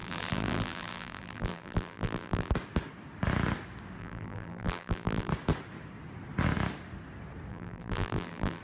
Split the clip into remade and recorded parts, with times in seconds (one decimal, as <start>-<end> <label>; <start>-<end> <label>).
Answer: 0.0-2.5 remade; 2.5-4.0 recorded; 4.0-5.3 remade; 5.3-7.5 recorded; 7.5-8.6 remade